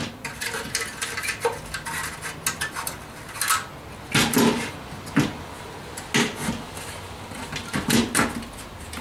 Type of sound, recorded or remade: recorded